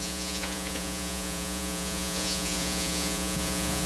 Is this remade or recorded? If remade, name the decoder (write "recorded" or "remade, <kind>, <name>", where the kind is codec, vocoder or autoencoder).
remade, vocoder, Vocos